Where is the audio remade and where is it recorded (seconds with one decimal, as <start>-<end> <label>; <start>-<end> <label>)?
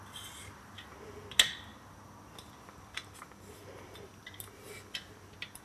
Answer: 0.0-5.6 recorded